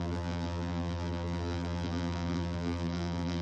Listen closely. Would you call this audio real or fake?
fake